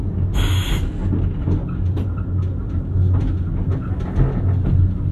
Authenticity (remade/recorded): recorded